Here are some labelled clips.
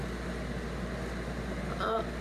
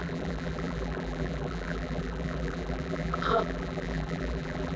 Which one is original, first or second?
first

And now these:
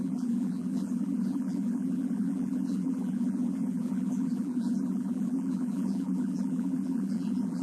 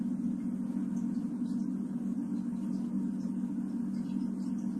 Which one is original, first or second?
second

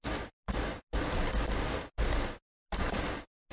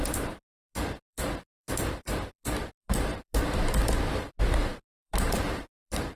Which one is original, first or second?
first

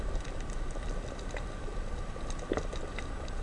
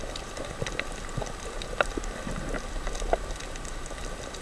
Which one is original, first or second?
second